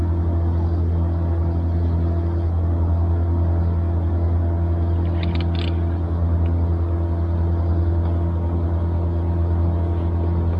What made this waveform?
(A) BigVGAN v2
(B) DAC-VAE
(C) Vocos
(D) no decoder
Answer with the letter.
D